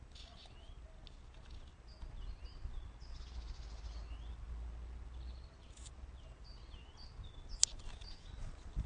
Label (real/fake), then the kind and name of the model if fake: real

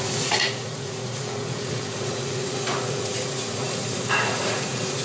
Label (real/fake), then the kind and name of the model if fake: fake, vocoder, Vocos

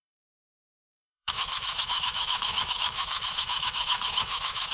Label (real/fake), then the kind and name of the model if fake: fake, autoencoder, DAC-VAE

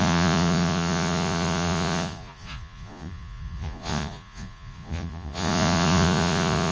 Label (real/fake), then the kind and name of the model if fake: fake, vocoder, Vocos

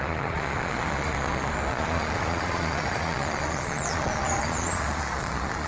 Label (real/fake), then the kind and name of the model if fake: fake, vocoder, Vocos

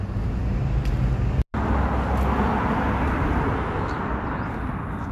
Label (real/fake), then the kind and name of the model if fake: real